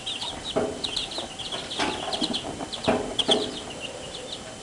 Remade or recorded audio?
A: recorded